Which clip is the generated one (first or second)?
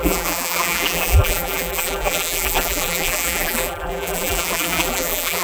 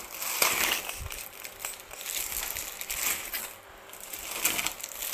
first